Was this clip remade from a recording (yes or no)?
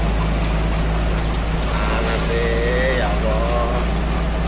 no